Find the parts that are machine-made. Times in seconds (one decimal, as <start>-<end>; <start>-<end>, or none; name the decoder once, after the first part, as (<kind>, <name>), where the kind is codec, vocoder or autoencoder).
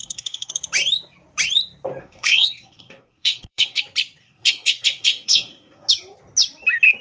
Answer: 0.0-0.5 (codec, SNAC); 2.0-3.8; 4.2-5.9